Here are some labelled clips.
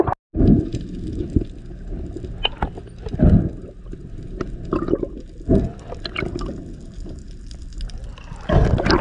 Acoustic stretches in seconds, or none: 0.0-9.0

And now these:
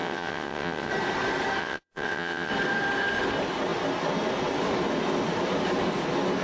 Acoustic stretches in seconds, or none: 0.9-1.6; 2.5-6.4

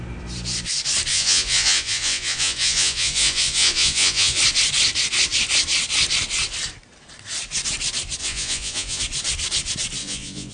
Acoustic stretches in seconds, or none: 0.0-1.1; 4.4-8.2; 9.0-10.0

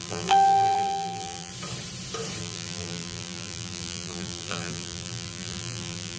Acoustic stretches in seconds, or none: 1.5-2.4

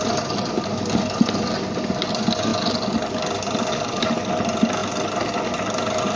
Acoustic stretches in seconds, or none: 0.0-6.2

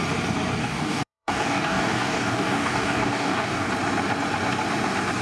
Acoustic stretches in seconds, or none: 0.0-0.6; 3.7-5.2

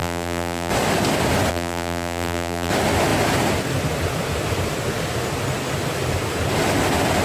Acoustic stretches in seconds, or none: 0.7-1.5; 2.7-7.2

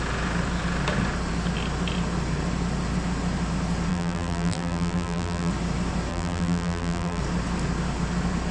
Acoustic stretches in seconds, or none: 0.0-3.9; 5.5-6.1; 7.2-8.5